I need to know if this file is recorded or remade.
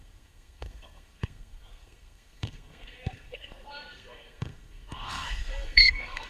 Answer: remade